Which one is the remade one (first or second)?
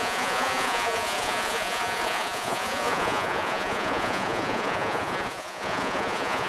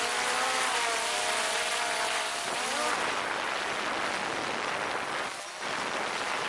first